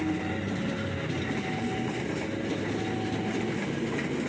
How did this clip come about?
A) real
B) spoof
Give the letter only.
A